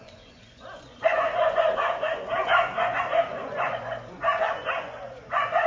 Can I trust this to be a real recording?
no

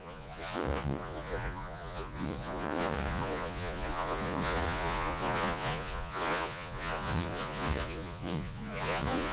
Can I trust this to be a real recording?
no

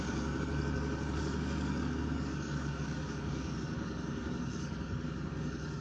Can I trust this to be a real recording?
no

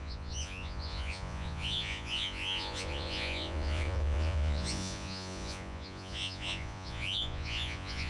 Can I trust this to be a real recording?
no